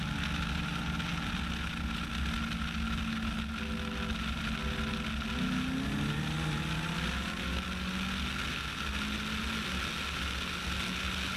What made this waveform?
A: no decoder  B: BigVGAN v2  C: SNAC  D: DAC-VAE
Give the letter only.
A